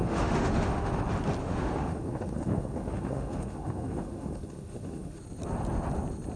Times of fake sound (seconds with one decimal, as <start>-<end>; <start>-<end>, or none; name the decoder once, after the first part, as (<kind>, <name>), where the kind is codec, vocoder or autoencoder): 0.0-0.9 (autoencoder, DAC-VAE); 1.4-5.2